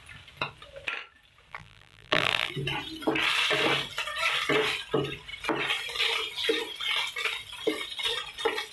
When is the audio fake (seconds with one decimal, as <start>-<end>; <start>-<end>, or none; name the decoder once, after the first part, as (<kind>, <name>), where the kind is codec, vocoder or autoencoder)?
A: 1.5-2.5 (vocoder, BigVGAN v2)